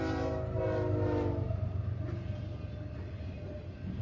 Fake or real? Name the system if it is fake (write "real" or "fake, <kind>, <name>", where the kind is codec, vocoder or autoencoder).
real